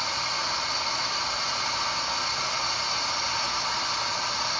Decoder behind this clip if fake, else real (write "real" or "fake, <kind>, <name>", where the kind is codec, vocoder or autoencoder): real